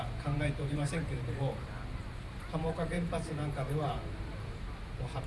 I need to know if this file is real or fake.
fake